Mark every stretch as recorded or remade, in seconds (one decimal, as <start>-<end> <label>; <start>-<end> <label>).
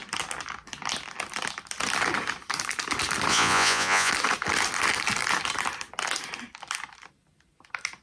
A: 0.0-3.3 recorded; 3.3-4.1 remade; 4.1-8.0 recorded